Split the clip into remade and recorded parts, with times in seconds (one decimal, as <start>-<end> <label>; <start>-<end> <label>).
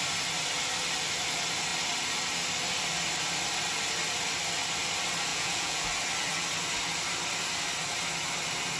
0.0-5.3 recorded; 5.3-5.8 remade; 5.8-8.8 recorded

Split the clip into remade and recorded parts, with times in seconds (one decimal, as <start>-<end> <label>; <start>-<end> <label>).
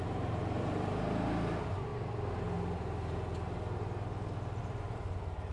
0.0-1.9 remade; 1.9-4.6 recorded; 4.6-5.5 remade